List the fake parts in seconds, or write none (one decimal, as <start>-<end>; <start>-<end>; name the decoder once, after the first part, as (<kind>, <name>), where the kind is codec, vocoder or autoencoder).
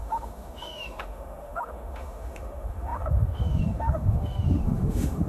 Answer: 0.0-5.3 (autoencoder, DAC-VAE)